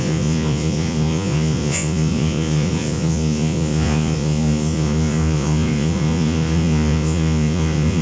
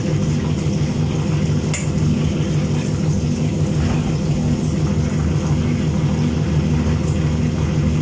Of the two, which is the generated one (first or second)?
first